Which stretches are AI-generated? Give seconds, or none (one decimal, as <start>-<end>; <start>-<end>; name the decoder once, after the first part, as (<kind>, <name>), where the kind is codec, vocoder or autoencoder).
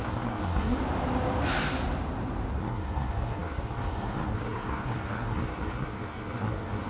0.0-0.8 (codec, SNAC); 2.6-6.9